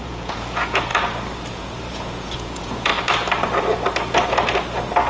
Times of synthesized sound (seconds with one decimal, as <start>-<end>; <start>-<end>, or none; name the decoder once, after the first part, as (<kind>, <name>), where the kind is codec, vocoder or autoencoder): 0.0-0.9 (vocoder, Vocos); 1.5-2.9

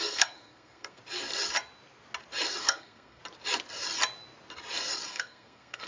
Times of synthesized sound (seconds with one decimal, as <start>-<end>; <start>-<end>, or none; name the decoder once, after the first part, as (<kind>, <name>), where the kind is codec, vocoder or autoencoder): 0.0-1.0 (codec, SNAC); 2.6-3.2; 5.1-5.9

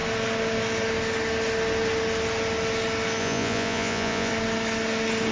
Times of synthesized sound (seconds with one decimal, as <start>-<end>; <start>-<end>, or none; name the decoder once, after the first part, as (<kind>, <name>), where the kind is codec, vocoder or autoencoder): 3.2-4.3 (vocoder, Vocos)